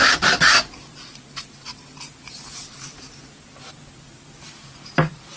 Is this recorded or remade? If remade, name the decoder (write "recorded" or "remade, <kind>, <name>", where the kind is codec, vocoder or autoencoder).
recorded